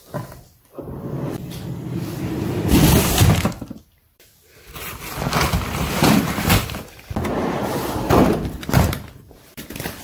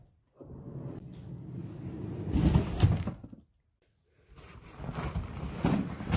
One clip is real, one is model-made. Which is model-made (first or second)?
first